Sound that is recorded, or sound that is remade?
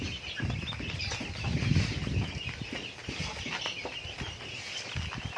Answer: recorded